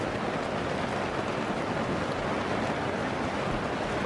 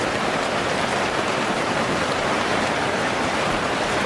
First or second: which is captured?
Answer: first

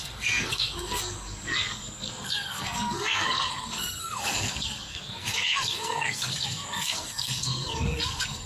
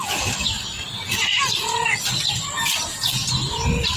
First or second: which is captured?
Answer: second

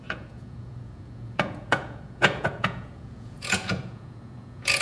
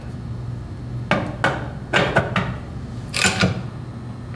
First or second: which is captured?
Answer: second